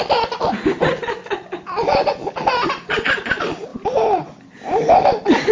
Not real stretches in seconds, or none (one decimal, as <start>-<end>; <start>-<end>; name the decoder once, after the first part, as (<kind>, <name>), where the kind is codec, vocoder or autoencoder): none